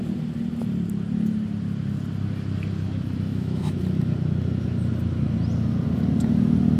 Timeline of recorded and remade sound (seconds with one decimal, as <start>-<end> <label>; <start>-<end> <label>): 0.0-3.3 recorded; 3.3-3.8 remade; 3.8-6.8 recorded